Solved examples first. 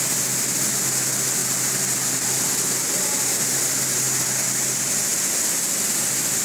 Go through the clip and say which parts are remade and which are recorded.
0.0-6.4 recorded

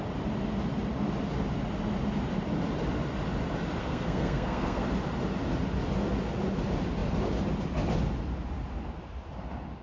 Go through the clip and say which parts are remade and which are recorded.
0.0-3.8 recorded; 3.8-4.9 remade; 4.9-9.8 recorded

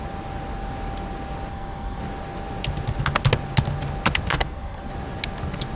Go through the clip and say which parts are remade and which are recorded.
0.0-1.5 recorded; 1.5-2.0 remade; 2.0-4.3 recorded; 4.3-4.9 remade; 4.9-5.8 recorded

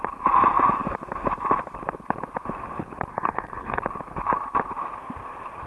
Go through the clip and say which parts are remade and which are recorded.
0.0-3.1 recorded; 3.1-3.8 remade; 3.8-5.7 recorded

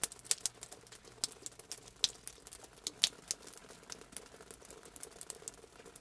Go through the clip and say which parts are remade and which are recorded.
0.0-6.0 recorded